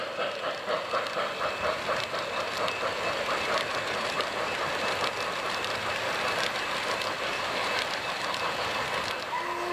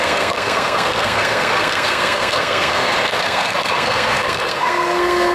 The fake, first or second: second